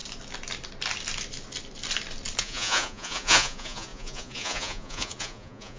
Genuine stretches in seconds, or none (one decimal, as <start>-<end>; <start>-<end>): 0.0-2.4